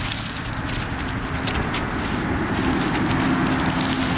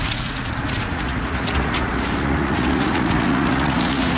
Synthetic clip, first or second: second